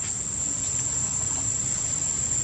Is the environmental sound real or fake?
real